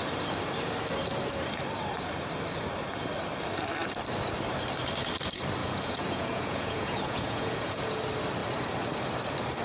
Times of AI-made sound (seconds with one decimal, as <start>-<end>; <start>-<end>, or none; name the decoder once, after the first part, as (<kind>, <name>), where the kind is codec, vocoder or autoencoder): 5.6-8.0 (vocoder, Vocos)